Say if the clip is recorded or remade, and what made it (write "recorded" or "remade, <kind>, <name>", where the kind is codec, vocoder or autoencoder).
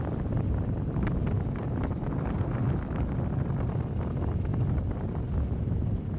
recorded